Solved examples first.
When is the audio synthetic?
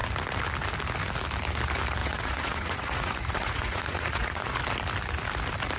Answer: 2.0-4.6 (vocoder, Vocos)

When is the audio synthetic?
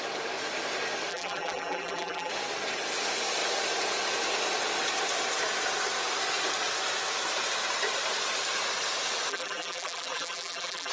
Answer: 1.1-2.3 (vocoder, BigVGAN v2); 9.3-10.9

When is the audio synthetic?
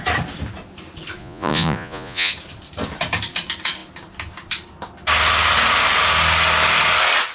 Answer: 1.2-2.3 (vocoder, Vocos)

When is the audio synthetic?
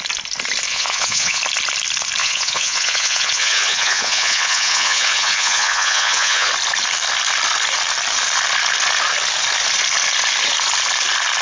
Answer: 0.7-1.4 (vocoder, Vocos); 2.2-6.5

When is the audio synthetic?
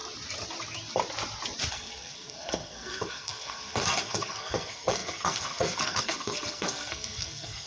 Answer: 1.7-7.7 (codec, SNAC)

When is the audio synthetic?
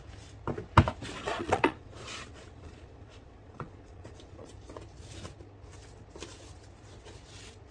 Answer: 1.2-4.5 (vocoder, Vocos)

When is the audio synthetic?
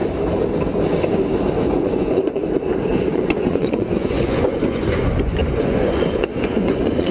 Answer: 1.6-2.4 (vocoder, Vocos); 2.9-7.1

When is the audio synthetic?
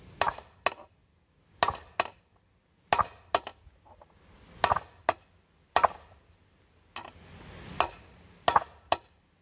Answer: none